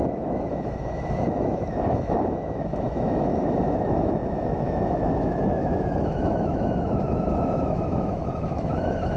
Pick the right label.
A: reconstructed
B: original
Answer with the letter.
A